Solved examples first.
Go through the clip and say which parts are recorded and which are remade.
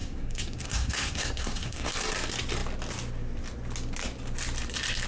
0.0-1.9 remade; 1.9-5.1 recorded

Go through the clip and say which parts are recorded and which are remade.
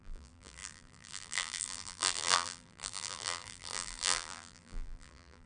0.0-5.5 remade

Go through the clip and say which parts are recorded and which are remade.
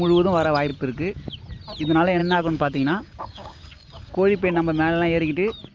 0.0-2.2 recorded; 2.2-4.1 remade; 4.1-5.7 recorded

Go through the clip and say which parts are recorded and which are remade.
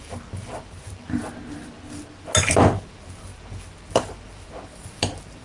0.0-1.2 remade; 1.2-2.9 recorded; 2.9-5.4 remade